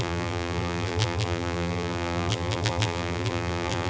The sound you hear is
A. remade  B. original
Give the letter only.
A